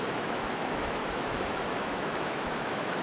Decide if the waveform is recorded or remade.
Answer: remade